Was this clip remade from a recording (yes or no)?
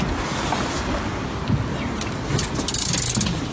no